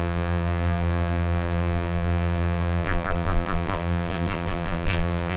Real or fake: fake